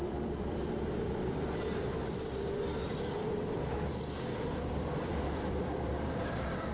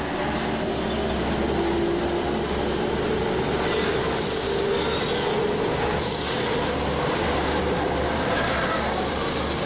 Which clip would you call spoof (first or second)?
first